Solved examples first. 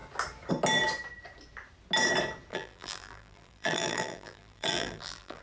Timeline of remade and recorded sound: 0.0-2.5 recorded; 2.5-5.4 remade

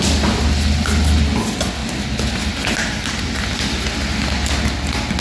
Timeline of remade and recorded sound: 0.0-5.2 recorded

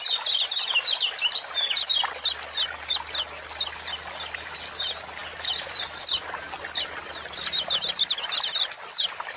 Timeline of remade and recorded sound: 0.0-9.4 recorded

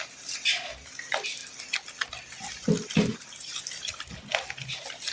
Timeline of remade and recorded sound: 0.0-3.1 recorded; 3.1-4.3 remade; 4.3-5.1 recorded

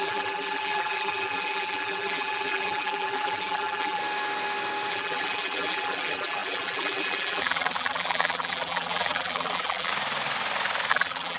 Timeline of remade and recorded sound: 0.0-4.0 remade; 4.0-4.9 recorded; 4.9-9.9 remade; 9.9-10.9 recorded; 10.9-11.4 remade

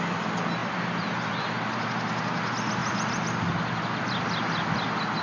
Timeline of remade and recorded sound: 0.0-0.6 recorded; 0.6-1.3 remade; 1.3-5.2 recorded

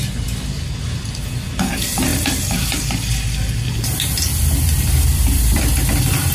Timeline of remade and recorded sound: 0.0-6.3 remade